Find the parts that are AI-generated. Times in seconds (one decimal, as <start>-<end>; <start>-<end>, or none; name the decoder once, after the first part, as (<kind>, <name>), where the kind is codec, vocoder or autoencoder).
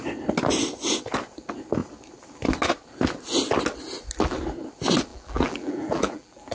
5.1-6.5 (vocoder, BigVGAN v2)